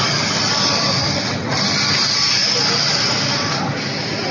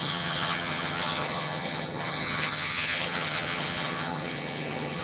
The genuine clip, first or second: first